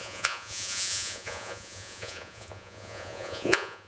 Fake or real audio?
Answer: fake